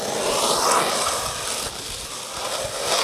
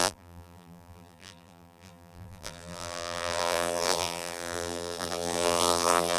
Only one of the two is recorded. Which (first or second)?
first